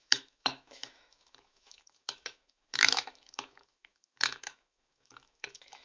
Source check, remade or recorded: remade